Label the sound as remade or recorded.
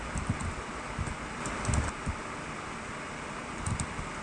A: recorded